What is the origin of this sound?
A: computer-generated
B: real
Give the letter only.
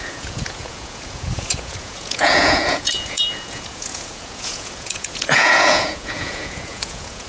A